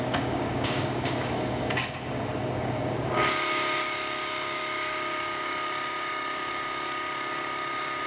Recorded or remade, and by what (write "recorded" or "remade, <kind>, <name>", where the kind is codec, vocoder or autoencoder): remade, codec, DAC